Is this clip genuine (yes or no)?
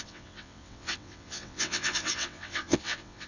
no